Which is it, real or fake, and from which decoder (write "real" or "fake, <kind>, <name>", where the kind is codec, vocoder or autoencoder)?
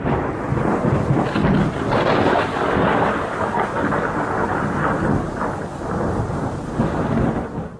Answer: real